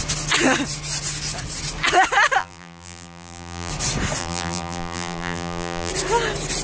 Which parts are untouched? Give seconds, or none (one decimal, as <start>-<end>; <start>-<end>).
0.0-2.4; 3.7-4.2; 5.9-6.6